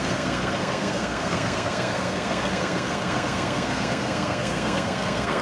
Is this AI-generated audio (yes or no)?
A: yes